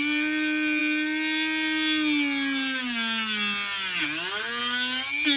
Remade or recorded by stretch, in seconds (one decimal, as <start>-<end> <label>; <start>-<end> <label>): 0.0-5.4 recorded